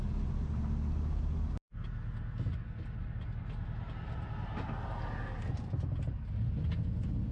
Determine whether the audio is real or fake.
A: real